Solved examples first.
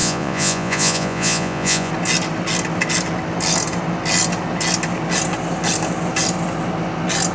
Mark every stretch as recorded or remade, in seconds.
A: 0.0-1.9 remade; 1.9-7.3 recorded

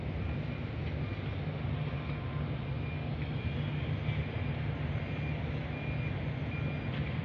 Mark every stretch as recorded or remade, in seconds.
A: 0.0-7.2 recorded

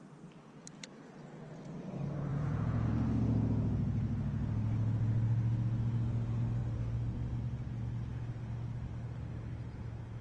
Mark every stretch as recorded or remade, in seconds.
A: 0.0-2.3 recorded; 2.3-2.9 remade; 2.9-10.2 recorded

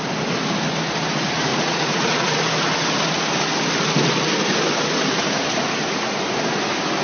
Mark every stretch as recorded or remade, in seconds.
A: 0.0-1.5 recorded; 1.5-2.4 remade; 2.4-7.0 recorded

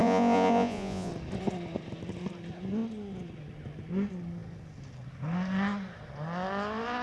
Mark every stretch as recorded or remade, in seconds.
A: 0.0-1.1 remade; 1.1-7.0 recorded